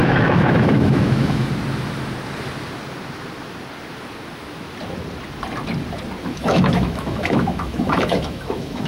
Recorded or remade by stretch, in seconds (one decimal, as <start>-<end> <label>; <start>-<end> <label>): 0.0-1.5 remade; 1.5-6.2 recorded; 6.2-8.9 remade